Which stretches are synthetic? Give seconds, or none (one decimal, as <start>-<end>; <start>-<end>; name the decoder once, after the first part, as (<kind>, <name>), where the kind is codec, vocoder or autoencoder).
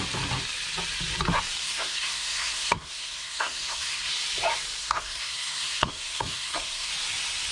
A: 1.6-4.1 (codec, SNAC); 4.8-6.9